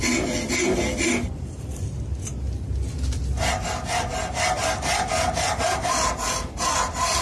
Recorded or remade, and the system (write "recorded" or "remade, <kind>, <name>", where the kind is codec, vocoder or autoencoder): recorded